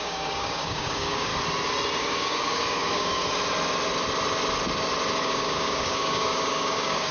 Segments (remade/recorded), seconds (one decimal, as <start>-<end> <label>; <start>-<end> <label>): 0.0-1.3 remade; 1.3-2.0 recorded; 2.0-3.2 remade; 3.2-5.2 recorded; 5.2-7.1 remade